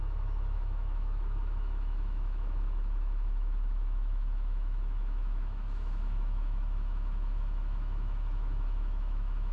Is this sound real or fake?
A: fake